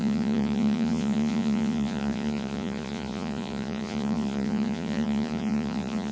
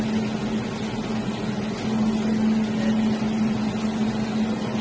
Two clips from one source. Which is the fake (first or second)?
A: first